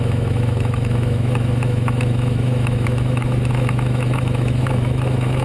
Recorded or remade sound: remade